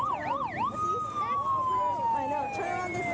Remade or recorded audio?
recorded